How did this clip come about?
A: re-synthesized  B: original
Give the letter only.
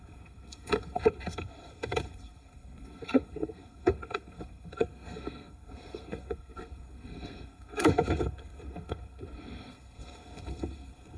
A